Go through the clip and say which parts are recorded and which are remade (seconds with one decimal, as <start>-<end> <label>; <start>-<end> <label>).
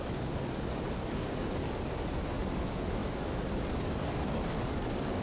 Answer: 0.0-5.2 remade